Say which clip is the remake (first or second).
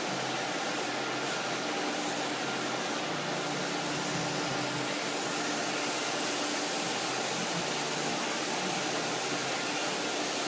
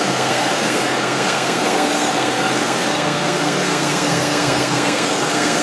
second